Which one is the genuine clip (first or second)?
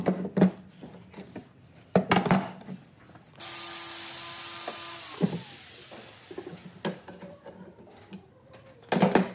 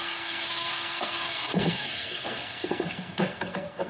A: first